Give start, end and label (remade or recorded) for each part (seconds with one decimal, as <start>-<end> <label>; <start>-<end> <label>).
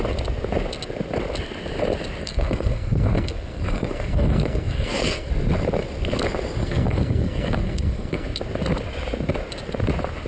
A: 0.0-2.2 recorded; 2.2-5.3 remade; 5.3-6.6 recorded; 6.6-8.4 remade; 8.4-10.3 recorded